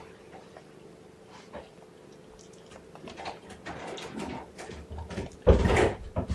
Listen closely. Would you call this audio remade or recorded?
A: recorded